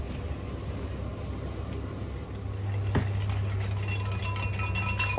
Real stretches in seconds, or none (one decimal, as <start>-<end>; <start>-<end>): 0.0-5.2